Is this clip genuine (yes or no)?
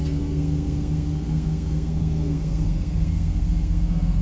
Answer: no